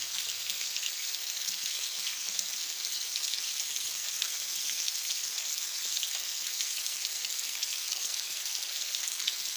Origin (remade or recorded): remade